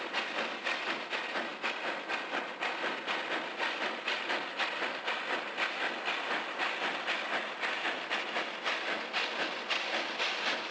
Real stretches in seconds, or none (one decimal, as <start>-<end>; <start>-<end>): 0.0-10.7